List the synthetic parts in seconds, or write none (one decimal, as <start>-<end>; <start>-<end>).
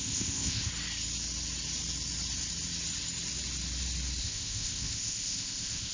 0.0-0.7; 4.2-5.9